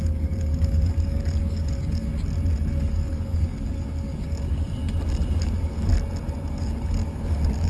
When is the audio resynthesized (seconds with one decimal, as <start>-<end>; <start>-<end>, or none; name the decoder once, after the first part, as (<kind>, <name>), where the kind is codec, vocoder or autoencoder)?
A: 0.0-2.1 (codec, DAC); 2.7-4.8; 5.4-5.9; 6.5-7.7